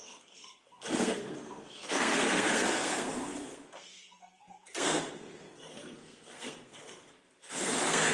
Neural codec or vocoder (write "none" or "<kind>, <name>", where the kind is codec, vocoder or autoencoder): codec, SNAC